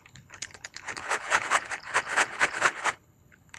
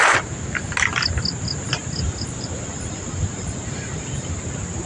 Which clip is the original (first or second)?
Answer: second